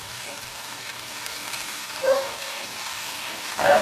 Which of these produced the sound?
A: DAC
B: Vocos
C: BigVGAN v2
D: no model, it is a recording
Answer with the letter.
A